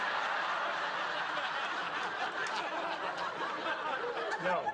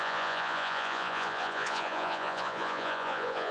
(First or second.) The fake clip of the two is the second